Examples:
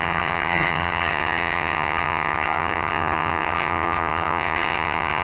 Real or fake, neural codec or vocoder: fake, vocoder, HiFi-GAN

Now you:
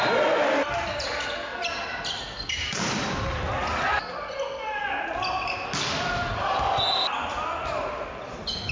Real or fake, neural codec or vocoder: real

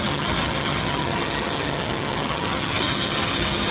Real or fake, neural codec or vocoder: fake, vocoder, HiFi-GAN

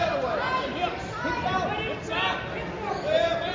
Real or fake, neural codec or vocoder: real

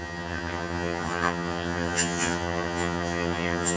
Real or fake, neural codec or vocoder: fake, vocoder, HiFi-GAN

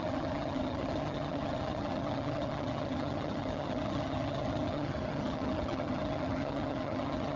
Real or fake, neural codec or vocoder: fake, vocoder, HiFi-GAN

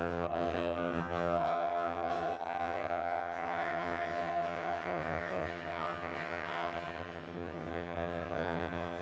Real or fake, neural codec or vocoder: fake, vocoder, HiFi-GAN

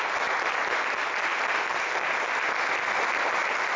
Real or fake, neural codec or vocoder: real